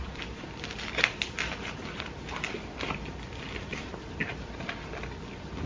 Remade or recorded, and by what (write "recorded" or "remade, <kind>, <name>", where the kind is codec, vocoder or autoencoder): recorded